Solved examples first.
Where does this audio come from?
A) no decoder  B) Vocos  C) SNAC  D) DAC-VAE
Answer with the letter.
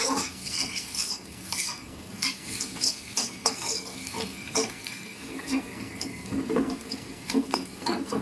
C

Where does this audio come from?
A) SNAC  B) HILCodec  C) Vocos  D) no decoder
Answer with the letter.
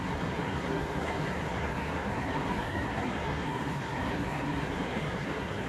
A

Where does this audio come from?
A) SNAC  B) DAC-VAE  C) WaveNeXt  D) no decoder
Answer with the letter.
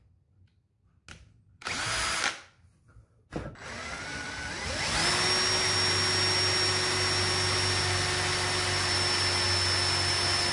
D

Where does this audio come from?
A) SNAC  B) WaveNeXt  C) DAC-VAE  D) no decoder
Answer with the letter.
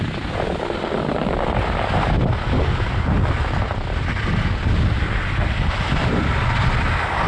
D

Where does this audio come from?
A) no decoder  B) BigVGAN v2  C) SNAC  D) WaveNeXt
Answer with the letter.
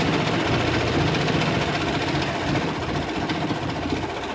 A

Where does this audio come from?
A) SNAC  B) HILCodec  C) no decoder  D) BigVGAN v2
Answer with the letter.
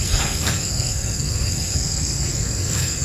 A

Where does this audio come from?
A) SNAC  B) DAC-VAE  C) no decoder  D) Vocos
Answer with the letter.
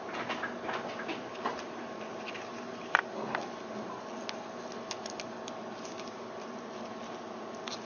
C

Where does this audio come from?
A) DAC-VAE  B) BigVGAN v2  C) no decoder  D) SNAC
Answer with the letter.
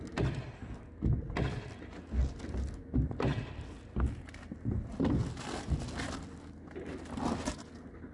C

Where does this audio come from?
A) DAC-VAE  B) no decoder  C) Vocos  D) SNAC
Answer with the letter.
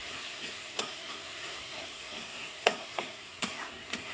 D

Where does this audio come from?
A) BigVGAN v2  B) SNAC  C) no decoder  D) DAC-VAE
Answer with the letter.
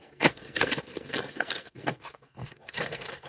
B